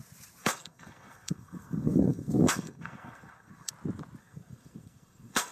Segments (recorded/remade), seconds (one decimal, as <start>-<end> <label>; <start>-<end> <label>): 0.0-0.4 recorded; 0.4-3.7 remade; 3.7-4.2 recorded; 4.2-5.5 remade